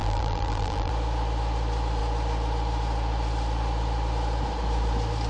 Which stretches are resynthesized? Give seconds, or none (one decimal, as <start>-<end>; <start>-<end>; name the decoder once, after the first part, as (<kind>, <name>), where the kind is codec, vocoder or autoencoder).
0.0-0.9 (vocoder, BigVGAN v2)